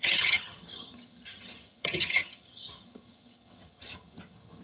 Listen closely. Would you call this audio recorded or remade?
remade